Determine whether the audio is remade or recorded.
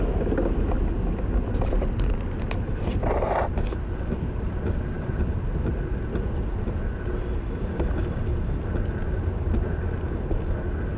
recorded